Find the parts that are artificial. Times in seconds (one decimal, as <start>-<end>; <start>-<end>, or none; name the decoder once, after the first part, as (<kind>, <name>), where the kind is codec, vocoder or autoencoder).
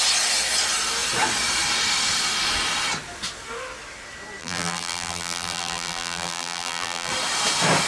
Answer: 4.4-7.1 (vocoder, BigVGAN v2)